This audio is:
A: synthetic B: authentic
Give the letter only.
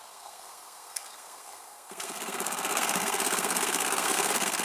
A